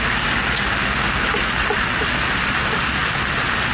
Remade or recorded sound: recorded